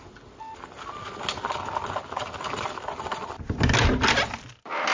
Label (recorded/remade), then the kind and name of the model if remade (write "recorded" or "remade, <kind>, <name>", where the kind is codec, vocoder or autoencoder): recorded